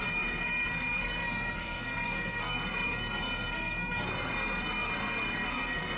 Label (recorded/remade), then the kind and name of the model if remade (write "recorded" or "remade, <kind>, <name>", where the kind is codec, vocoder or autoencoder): remade, codec, SNAC